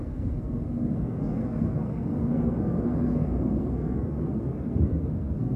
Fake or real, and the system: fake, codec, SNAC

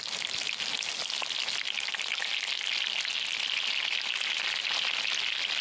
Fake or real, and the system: real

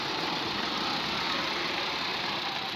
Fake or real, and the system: fake, vocoder, BigVGAN v2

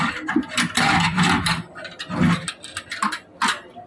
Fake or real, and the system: real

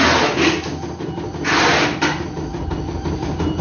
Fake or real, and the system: real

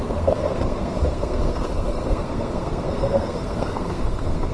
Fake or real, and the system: fake, codec, SNAC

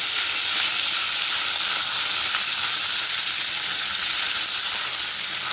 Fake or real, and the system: fake, vocoder, BigVGAN v2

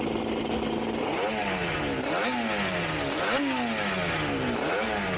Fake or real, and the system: real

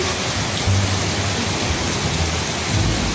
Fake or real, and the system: real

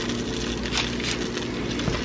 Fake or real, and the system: real